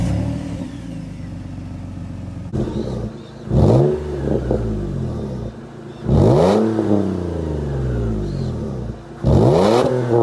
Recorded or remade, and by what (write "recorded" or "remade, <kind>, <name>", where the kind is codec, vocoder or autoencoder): recorded